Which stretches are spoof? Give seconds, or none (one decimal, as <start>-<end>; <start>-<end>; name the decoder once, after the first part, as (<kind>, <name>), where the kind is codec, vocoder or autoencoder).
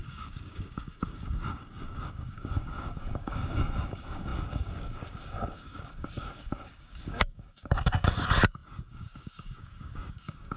0.0-10.6 (codec, DAC)